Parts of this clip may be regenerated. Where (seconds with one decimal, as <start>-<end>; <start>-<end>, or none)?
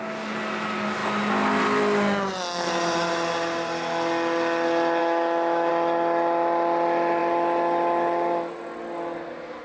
5.0-5.7